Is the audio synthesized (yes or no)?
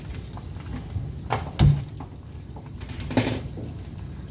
no